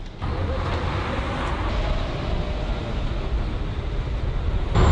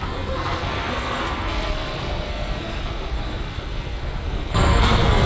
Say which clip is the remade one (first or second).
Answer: second